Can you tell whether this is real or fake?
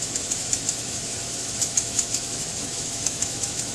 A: fake